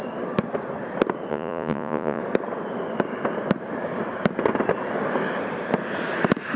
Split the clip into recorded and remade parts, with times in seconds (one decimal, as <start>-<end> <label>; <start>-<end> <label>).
0.0-1.3 recorded; 1.3-2.2 remade; 2.2-6.6 recorded